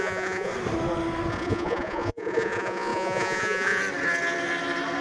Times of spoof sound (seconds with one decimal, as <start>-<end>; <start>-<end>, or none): 0.0-0.5; 1.3-3.8